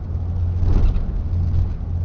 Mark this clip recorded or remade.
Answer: recorded